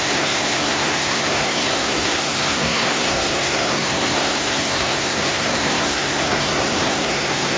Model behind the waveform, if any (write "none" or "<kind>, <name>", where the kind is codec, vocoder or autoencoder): codec, SNAC